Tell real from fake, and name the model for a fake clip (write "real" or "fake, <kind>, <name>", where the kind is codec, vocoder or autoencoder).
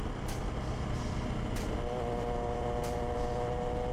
real